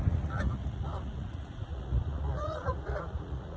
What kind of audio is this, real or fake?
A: fake